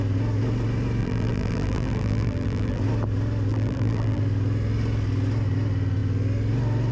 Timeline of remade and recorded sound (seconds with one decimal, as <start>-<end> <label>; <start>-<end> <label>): 0.0-1.0 recorded; 1.0-2.8 remade; 2.8-3.5 recorded; 3.5-4.2 remade; 4.2-6.9 recorded

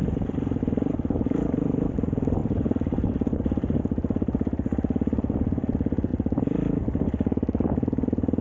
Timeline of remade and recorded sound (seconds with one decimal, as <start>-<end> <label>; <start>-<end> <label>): 0.0-2.4 remade; 2.4-3.8 recorded; 3.8-8.4 remade

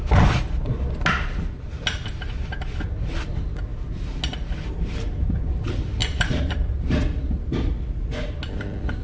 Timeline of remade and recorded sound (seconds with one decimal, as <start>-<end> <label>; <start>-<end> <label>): 0.0-6.0 recorded; 6.0-6.7 remade; 6.7-9.0 recorded

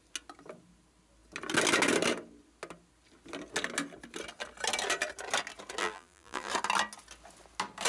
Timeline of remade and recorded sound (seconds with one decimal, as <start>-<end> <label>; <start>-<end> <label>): 0.0-5.8 recorded; 5.8-6.5 remade; 6.5-7.9 recorded

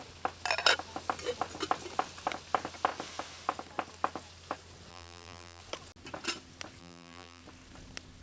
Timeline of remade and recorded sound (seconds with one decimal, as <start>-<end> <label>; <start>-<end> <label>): 0.0-4.9 recorded; 4.9-5.6 remade; 5.6-6.8 recorded; 6.8-7.4 remade; 7.4-8.2 recorded

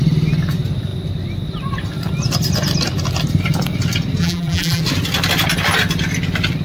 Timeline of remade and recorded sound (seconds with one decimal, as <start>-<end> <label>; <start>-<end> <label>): 0.0-4.2 recorded; 4.2-4.8 remade; 4.8-6.6 recorded